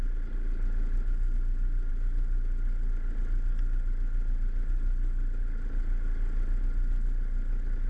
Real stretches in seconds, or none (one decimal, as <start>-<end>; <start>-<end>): 0.0-7.9